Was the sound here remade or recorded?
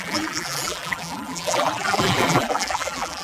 remade